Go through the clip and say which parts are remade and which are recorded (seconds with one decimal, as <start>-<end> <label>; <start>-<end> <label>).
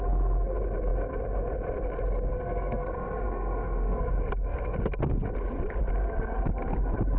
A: 0.0-2.3 recorded; 2.3-4.1 remade; 4.1-7.2 recorded